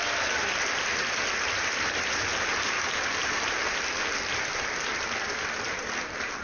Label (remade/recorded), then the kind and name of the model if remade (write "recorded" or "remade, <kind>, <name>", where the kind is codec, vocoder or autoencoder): recorded